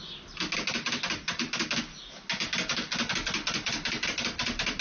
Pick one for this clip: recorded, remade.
recorded